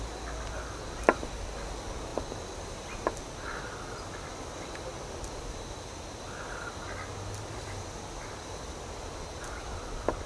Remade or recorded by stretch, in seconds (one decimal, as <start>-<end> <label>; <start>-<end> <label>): 0.0-10.3 recorded